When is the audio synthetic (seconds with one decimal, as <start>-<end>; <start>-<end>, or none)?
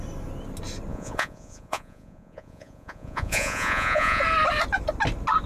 0.9-4.2